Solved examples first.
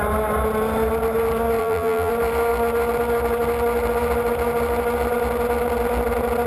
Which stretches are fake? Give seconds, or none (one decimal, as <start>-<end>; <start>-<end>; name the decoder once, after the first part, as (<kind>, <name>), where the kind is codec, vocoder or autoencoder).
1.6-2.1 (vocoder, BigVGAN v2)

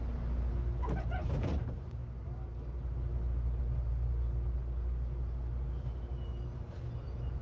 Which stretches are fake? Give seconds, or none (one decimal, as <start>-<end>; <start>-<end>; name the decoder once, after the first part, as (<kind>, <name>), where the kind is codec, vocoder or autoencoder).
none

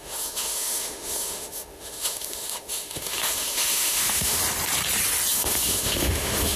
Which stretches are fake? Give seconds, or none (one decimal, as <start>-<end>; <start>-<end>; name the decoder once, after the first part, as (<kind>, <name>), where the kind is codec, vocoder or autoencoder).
0.0-4.4 (autoencoder, DAC-VAE); 5.3-6.6